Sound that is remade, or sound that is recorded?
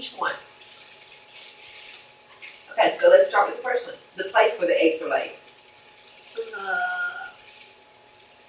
recorded